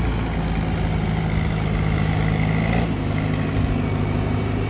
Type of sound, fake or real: real